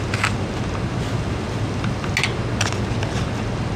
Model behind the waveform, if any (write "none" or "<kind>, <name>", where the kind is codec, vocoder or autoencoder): none